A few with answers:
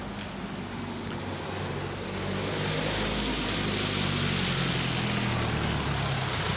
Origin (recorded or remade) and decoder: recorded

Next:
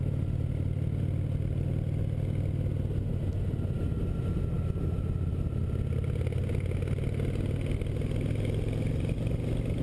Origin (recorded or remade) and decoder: recorded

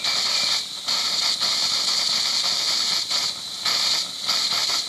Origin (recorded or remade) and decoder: recorded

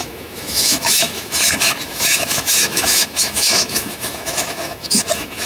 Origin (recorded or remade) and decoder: remade, autoencoder, DAC-VAE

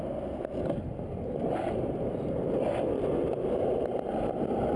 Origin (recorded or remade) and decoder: recorded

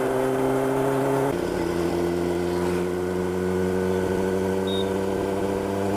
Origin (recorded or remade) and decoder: recorded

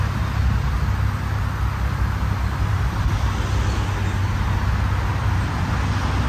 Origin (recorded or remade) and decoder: recorded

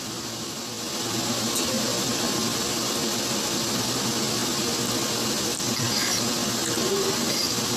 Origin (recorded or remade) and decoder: recorded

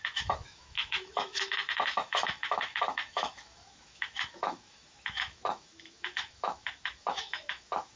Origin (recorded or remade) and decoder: remade, autoencoder, DAC-VAE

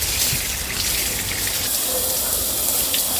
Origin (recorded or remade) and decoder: recorded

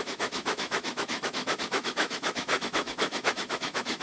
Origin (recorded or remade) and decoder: remade, autoencoder, DAC-VAE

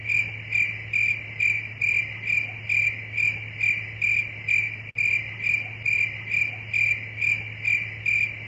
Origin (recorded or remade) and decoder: recorded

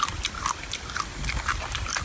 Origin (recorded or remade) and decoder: recorded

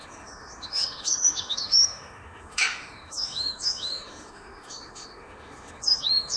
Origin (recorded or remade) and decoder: remade, autoencoder, DAC-VAE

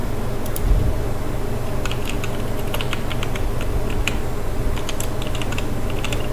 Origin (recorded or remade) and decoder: recorded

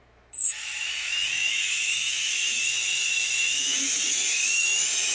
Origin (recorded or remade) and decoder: remade, autoencoder, DAC-VAE